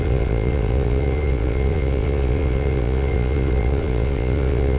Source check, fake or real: fake